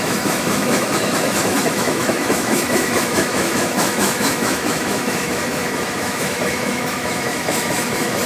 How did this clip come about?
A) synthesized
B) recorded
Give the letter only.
A